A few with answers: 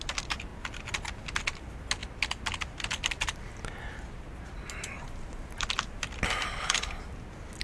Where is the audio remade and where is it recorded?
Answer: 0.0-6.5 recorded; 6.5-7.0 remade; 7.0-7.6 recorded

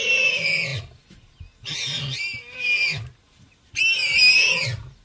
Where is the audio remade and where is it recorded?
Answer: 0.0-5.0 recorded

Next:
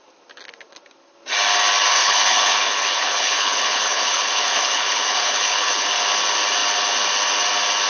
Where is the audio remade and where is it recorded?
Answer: 0.0-1.9 recorded; 1.9-6.0 remade; 6.0-7.9 recorded

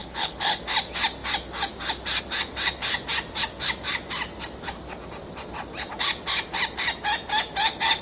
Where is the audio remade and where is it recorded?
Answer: 0.0-0.6 remade; 0.6-8.0 recorded

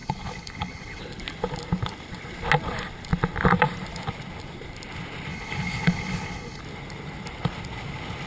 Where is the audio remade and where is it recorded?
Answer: 0.0-1.0 remade; 1.0-5.3 recorded; 5.3-6.6 remade; 6.6-8.3 recorded

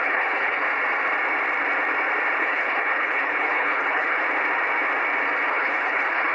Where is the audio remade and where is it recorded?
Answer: 0.0-0.6 remade; 0.6-2.4 recorded; 2.4-4.2 remade; 4.2-5.5 recorded; 5.5-6.3 remade

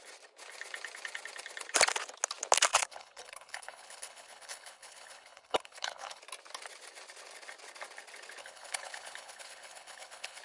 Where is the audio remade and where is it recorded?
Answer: 0.0-2.7 recorded; 2.7-6.2 remade; 6.2-8.4 recorded; 8.4-10.4 remade